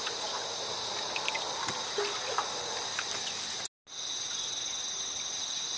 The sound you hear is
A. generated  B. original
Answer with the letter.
B